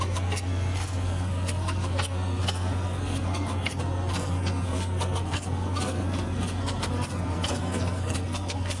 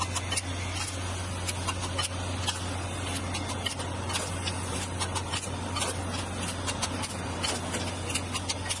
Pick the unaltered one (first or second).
second